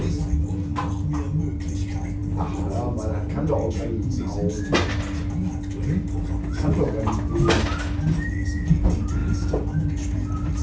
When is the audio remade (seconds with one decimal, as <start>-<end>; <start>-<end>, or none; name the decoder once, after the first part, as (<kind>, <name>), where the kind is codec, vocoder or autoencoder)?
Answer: none